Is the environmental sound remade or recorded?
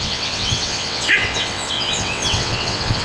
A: remade